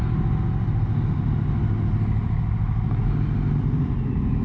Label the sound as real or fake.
real